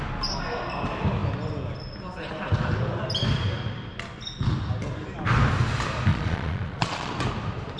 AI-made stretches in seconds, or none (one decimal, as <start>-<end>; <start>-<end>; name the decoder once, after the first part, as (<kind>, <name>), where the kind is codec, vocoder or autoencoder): 6.1-7.1 (vocoder, Vocos)